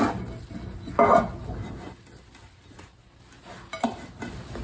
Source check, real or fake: real